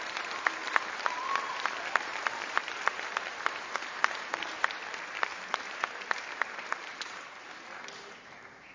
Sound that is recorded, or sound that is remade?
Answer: remade